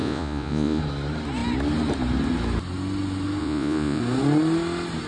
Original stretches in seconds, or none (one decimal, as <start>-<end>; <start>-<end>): 0.8-3.4; 4.0-5.1